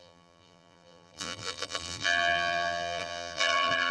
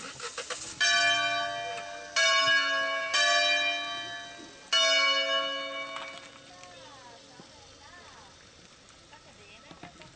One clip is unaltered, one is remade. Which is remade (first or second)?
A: first